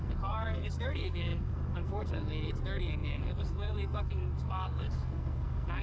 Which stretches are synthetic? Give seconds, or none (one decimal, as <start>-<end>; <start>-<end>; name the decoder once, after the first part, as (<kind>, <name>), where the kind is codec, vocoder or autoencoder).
0.0-5.8 (codec, SNAC)